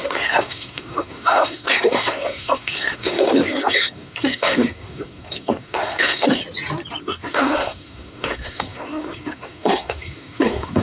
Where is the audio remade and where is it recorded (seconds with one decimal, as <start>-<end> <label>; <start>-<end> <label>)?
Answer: 0.0-6.4 remade; 6.4-7.0 recorded; 7.0-10.8 remade